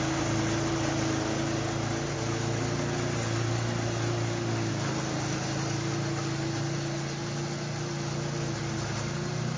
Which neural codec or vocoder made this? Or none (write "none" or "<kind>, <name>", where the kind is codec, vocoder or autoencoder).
none